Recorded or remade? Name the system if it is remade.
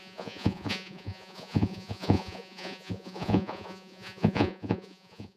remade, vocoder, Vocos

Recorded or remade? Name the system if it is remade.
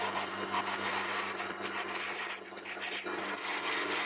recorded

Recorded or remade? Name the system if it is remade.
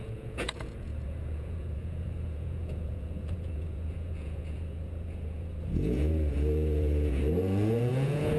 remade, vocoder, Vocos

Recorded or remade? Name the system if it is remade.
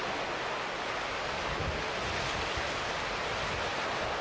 recorded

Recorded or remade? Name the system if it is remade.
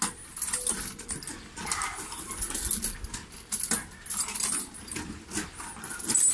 recorded